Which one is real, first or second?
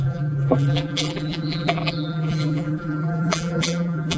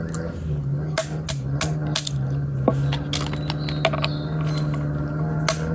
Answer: second